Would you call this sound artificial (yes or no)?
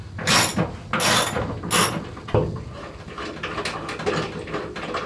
no